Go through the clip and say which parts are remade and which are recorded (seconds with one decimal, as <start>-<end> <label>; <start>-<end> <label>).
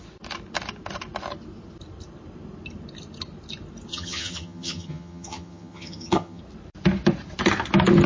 0.0-3.9 recorded; 3.9-6.4 remade; 6.4-8.1 recorded